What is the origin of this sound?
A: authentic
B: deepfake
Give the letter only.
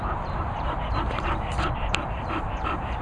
B